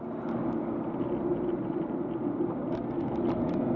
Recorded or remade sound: recorded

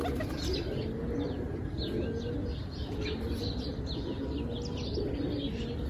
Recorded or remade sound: recorded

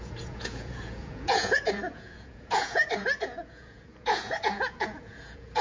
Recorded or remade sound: remade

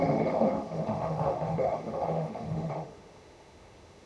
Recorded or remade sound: remade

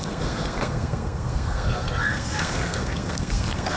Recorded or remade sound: remade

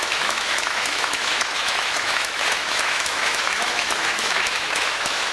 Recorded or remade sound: remade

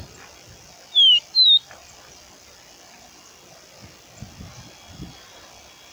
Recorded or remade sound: recorded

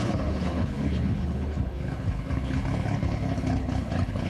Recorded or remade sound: remade